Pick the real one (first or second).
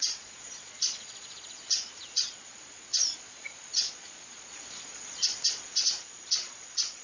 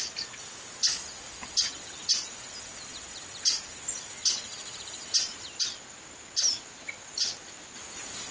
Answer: second